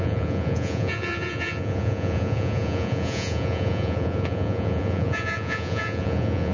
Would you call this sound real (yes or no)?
no